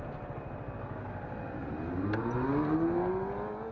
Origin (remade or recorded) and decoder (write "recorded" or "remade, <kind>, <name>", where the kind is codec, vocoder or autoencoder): recorded